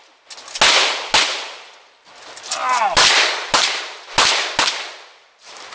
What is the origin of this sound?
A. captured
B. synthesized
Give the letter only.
A